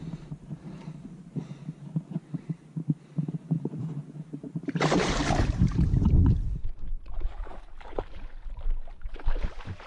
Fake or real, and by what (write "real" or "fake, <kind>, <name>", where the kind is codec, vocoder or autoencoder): fake, vocoder, BigVGAN v2